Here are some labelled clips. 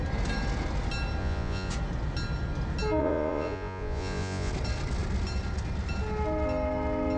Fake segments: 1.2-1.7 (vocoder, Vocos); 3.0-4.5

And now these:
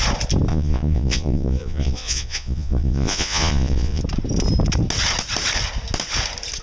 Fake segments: 0.5-4.0 (vocoder, Vocos)

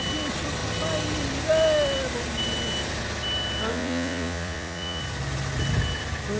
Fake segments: 3.7-5.0 (vocoder, Vocos)

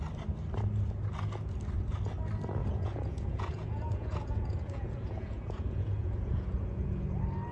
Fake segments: 2.6-7.1 (vocoder, Vocos)

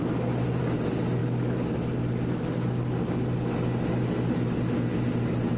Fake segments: none

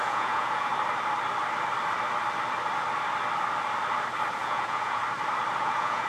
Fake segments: 0.0-0.7 (vocoder, Vocos); 4.4-5.0; 5.6-6.1